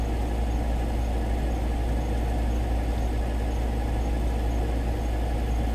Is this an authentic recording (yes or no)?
yes